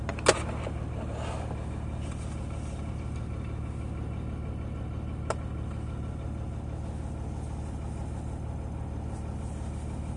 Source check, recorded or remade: recorded